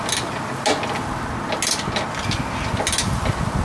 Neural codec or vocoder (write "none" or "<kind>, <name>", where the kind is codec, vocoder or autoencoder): none